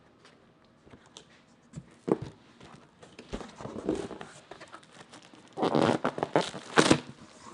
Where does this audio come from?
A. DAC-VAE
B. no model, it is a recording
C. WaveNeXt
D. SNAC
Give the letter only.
B